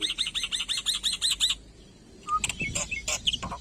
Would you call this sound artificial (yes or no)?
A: no